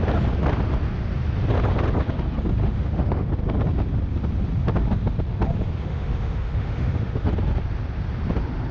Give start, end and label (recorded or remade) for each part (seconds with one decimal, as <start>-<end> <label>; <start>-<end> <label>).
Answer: 0.0-2.6 recorded; 2.6-3.3 remade; 3.3-5.8 recorded; 5.8-7.3 remade; 7.3-8.7 recorded